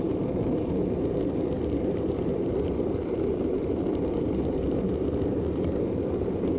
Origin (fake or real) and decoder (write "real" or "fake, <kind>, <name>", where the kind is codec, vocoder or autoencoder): real